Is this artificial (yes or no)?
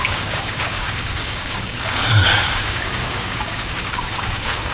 yes